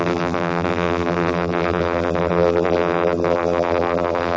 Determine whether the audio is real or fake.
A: fake